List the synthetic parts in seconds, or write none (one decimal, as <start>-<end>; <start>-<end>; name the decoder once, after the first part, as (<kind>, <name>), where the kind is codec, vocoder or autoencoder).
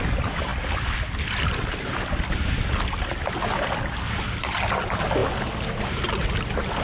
none